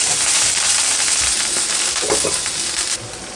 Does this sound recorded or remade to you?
recorded